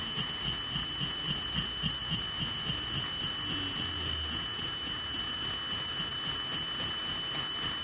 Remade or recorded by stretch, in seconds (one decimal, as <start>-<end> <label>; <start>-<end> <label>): 0.0-7.8 recorded